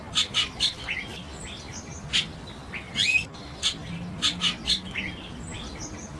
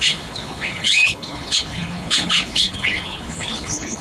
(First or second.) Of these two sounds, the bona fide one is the first